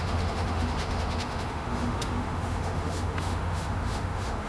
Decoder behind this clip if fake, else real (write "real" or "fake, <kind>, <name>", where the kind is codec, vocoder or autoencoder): fake, autoencoder, DAC-VAE